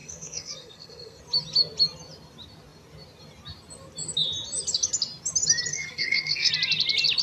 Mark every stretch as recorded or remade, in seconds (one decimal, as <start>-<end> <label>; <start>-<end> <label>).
0.0-1.2 remade; 1.2-5.7 recorded; 5.7-6.5 remade; 6.5-7.2 recorded